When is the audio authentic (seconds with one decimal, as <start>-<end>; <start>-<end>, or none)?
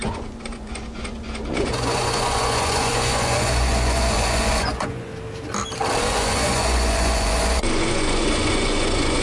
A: 5.1-6.0